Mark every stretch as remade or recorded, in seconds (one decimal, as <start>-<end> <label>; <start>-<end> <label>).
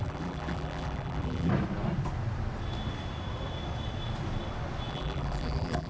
0.0-1.5 remade; 1.5-4.9 recorded; 4.9-5.9 remade